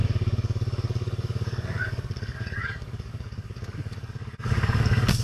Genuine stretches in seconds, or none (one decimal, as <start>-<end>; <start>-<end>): none